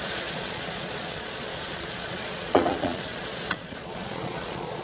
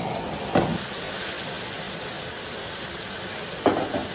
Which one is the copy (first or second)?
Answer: first